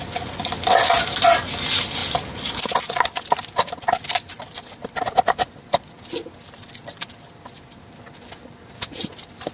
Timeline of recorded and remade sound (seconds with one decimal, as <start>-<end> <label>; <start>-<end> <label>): 0.0-2.0 recorded; 2.0-7.1 remade; 7.1-9.5 recorded